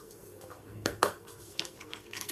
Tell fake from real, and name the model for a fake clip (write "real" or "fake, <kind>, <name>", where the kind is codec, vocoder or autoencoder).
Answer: fake, codec, SNAC